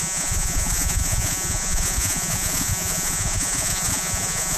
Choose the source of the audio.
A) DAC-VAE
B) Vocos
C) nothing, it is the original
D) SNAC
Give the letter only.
B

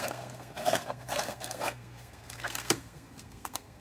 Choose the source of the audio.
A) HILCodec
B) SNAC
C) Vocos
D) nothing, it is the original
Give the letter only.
B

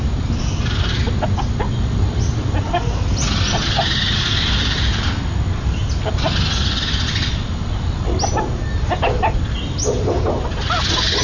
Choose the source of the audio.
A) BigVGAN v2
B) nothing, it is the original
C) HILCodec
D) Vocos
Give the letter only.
B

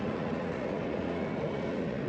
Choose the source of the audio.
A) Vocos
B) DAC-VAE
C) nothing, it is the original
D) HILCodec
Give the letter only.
A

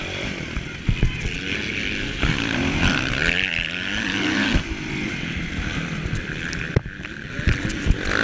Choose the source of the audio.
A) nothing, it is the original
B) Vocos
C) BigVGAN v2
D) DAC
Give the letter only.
C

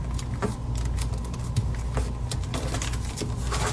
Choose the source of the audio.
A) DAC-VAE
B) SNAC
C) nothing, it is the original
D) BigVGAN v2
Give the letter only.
C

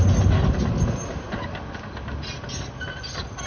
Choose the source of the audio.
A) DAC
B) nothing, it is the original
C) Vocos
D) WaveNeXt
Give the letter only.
B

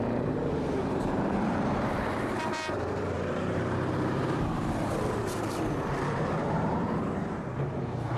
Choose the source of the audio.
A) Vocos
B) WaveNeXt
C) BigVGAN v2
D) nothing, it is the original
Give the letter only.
C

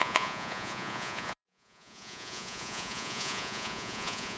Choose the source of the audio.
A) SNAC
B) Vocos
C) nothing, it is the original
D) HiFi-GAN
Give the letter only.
B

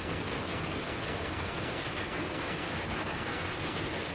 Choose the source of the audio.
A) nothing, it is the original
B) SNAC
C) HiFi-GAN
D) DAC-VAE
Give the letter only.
B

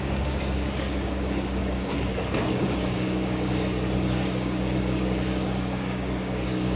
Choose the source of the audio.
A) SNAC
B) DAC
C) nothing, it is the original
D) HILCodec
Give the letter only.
B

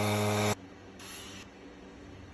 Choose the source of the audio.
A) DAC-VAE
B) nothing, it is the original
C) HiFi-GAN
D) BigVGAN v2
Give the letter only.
A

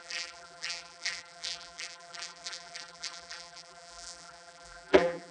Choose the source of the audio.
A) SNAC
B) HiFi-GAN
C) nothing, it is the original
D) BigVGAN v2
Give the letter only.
D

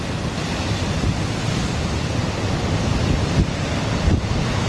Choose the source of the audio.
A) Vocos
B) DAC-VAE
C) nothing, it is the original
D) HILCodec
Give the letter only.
C